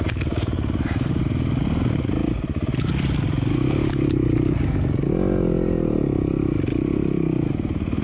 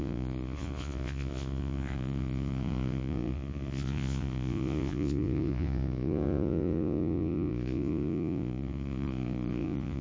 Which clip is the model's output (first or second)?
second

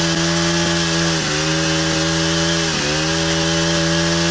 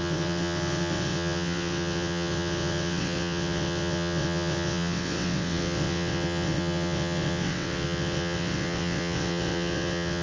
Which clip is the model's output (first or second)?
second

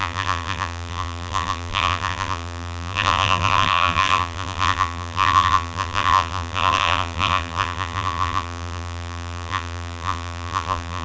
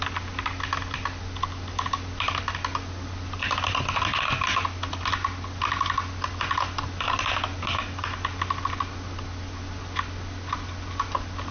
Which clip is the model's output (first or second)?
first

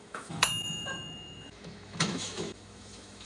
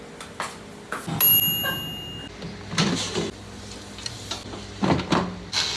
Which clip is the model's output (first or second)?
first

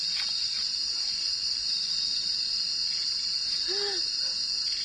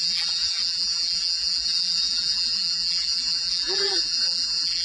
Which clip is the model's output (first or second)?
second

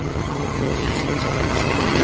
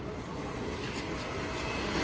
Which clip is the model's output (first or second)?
first